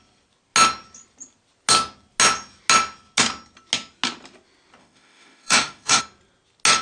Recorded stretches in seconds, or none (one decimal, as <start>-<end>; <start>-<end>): 0.0-4.8; 6.0-6.8